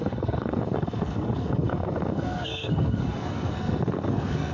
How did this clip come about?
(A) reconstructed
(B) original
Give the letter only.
A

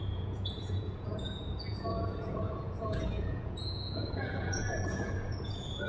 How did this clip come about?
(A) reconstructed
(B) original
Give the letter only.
A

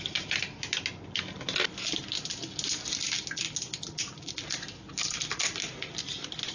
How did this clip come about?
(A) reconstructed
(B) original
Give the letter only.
B